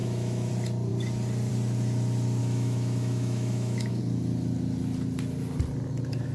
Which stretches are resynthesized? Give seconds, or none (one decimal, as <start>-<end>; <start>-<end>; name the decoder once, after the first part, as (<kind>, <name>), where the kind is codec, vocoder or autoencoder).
0.0-0.5 (autoencoder, DAC-VAE); 2.4-4.0